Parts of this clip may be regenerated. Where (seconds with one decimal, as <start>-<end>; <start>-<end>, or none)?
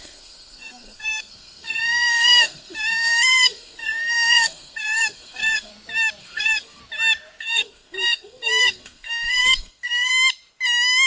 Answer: 0.0-5.7; 6.2-6.8; 7.4-10.1